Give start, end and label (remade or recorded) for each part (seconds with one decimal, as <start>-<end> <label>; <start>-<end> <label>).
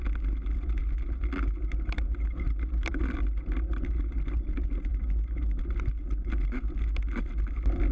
0.0-7.9 recorded